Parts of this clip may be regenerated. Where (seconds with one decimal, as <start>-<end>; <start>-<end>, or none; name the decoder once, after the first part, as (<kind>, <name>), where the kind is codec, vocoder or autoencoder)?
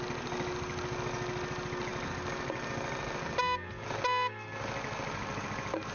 none